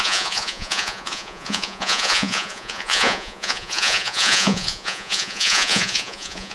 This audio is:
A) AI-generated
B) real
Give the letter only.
A